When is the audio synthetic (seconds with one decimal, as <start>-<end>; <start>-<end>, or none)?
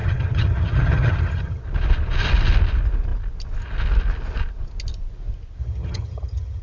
0.0-1.6; 5.6-6.6